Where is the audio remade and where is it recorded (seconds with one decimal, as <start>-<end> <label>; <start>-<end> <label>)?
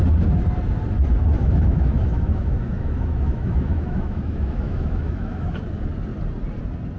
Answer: 0.0-1.4 recorded; 1.4-5.6 remade; 5.6-7.0 recorded